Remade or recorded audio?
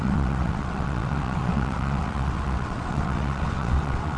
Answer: remade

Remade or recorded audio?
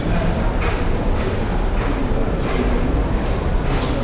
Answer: recorded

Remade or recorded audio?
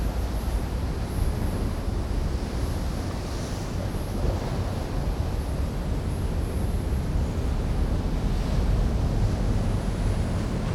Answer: recorded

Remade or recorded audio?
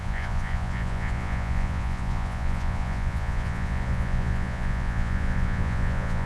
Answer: remade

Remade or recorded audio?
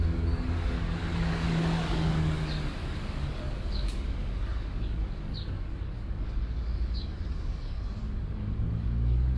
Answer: remade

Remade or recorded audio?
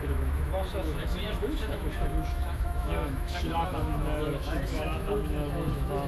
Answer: remade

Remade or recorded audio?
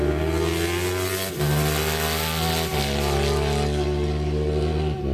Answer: recorded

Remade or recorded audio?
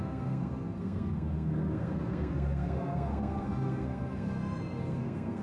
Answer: remade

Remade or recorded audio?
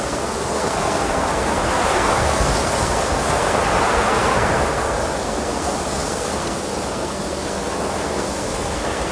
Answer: remade